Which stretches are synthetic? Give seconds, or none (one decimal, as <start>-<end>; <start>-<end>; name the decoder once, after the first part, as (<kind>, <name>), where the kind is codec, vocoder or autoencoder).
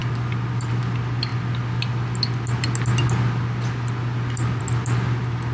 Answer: none